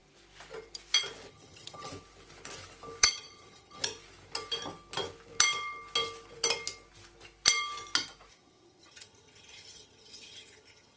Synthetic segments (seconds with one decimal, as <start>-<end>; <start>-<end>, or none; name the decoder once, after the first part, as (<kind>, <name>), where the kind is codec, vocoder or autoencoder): 1.3-1.9 (vocoder, HiFi-GAN); 3.0-3.8; 8.3-11.0

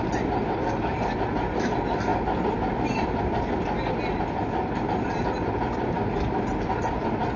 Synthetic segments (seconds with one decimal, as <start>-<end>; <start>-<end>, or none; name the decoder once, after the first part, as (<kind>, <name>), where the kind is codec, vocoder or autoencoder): none

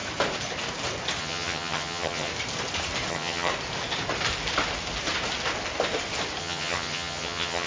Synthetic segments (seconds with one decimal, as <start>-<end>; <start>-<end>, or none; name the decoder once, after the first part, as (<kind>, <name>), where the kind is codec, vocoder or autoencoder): 1.2-2.3 (vocoder, HiFi-GAN); 3.1-3.5; 6.4-7.7

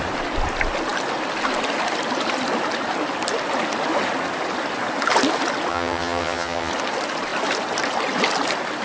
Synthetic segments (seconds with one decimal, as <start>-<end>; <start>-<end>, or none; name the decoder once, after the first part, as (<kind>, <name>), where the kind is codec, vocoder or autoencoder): 5.7-6.7 (vocoder, HiFi-GAN)